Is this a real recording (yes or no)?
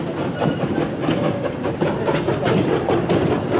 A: yes